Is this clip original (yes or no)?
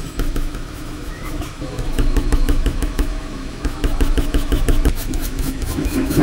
no